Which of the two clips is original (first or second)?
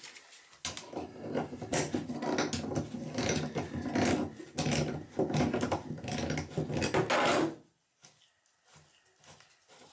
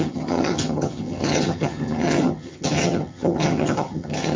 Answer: first